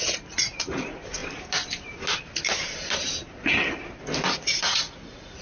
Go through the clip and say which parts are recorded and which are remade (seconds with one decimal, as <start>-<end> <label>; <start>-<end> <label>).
0.0-1.2 remade; 1.2-4.4 recorded; 4.4-5.4 remade